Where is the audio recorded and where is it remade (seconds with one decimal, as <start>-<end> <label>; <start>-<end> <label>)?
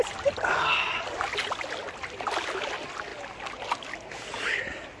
0.0-5.0 recorded